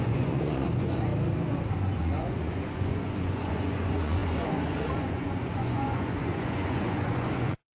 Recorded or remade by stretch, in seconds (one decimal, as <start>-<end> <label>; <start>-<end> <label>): 0.0-1.1 remade; 1.1-1.8 recorded; 1.8-7.7 remade